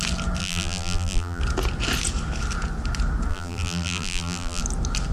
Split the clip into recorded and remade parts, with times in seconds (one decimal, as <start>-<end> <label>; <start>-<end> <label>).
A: 0.0-0.4 recorded; 0.4-1.4 remade; 1.4-3.3 recorded; 3.3-4.6 remade; 4.6-5.1 recorded